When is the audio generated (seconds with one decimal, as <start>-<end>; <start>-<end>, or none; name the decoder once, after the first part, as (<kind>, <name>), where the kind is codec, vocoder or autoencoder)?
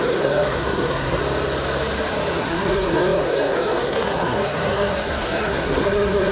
0.0-1.2 (codec, SNAC); 2.4-6.3